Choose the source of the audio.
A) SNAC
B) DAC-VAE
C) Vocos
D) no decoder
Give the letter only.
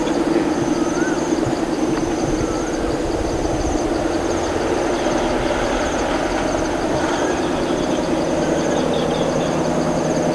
D